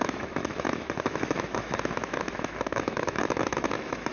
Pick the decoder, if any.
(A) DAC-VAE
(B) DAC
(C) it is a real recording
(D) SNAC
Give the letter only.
A